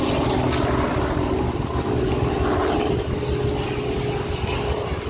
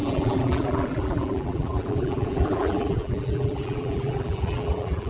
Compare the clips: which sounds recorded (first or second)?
first